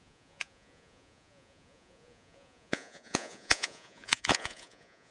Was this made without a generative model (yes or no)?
no